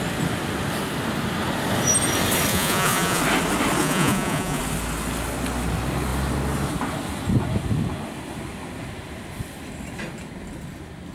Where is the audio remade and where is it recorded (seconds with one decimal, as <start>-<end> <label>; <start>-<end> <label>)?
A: 0.0-2.5 recorded; 2.5-3.2 remade; 3.2-3.8 recorded; 3.8-4.6 remade; 4.6-11.1 recorded